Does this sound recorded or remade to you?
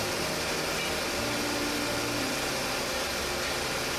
recorded